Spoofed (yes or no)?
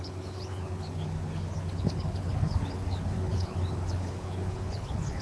yes